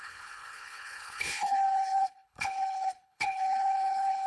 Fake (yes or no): yes